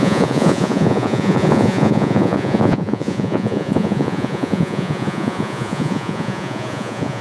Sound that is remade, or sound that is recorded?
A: remade